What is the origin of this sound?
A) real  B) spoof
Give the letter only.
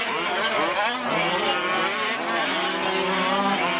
A